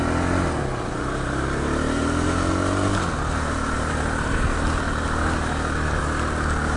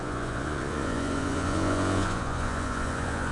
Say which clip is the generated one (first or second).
second